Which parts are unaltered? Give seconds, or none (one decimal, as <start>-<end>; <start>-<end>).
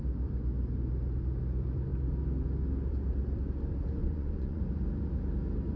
0.0-4.0; 4.6-5.8